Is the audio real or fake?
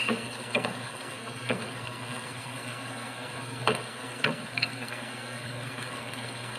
fake